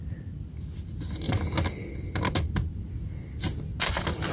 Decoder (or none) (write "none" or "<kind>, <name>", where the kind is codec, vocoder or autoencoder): none